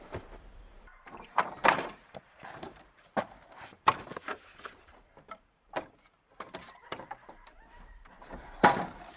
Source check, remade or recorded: remade